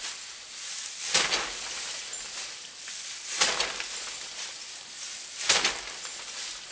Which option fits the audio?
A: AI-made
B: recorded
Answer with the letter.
B